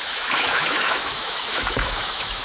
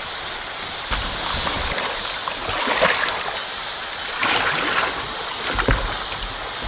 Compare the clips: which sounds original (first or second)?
second